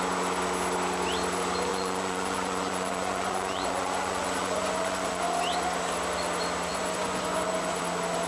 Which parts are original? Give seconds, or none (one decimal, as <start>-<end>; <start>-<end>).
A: 0.0-1.7; 5.2-6.7; 7.8-8.3

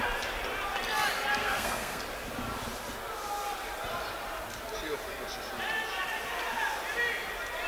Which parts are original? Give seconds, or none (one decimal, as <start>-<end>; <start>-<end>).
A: 0.0-1.4; 2.0-7.7